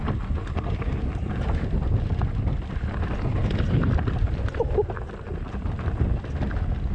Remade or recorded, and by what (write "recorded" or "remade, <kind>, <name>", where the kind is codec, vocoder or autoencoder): recorded